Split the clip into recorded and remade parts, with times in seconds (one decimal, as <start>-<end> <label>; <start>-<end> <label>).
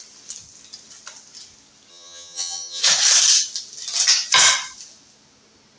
0.0-1.9 recorded; 1.9-2.8 remade; 2.8-5.8 recorded